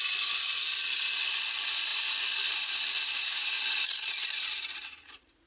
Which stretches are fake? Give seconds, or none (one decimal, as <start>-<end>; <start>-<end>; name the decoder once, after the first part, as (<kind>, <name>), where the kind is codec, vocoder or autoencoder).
4.2-5.5 (vocoder, Vocos)